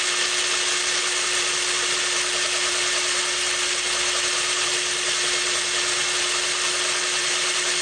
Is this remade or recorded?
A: recorded